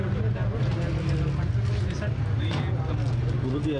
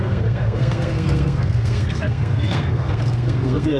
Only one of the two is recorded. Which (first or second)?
first